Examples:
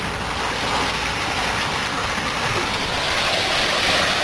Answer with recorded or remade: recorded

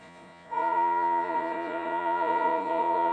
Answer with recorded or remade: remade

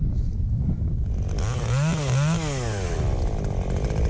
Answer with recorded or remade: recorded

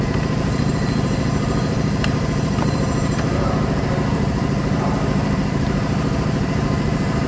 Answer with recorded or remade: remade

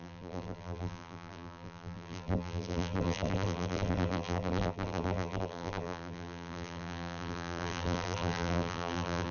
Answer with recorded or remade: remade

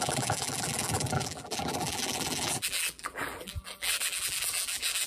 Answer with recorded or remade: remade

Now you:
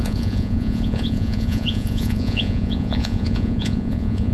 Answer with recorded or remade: remade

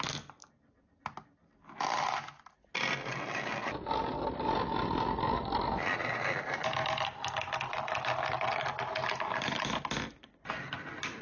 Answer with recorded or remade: recorded